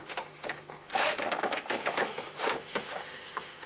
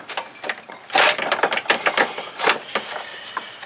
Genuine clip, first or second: second